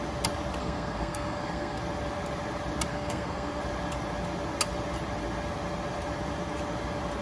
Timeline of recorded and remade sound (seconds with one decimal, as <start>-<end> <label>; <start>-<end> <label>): 0.0-0.6 recorded; 0.6-1.8 remade; 1.8-2.9 recorded; 2.9-3.6 remade; 3.6-7.2 recorded